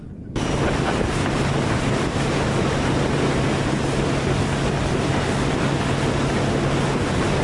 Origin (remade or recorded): recorded